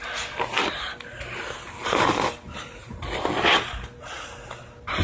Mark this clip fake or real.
real